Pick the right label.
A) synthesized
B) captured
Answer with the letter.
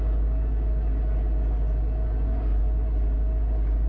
B